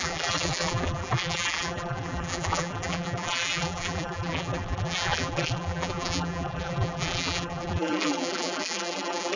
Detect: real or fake fake